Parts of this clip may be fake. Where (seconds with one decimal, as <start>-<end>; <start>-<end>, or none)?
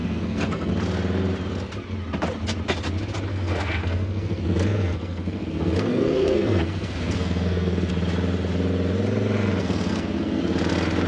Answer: 0.0-0.7; 3.3-7.9; 9.6-10.4